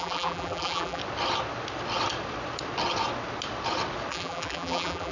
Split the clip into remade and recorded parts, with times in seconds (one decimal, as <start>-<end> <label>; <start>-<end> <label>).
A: 0.0-1.0 remade; 1.0-4.1 recorded; 4.1-5.1 remade